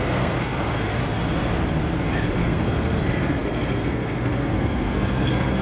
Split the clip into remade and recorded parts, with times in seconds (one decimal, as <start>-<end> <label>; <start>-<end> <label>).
0.0-1.0 remade; 1.0-2.3 recorded; 2.3-5.6 remade